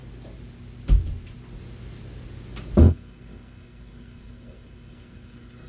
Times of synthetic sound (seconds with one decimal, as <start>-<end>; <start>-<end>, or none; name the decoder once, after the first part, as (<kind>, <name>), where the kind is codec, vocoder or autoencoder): 2.8-5.7 (codec, SNAC)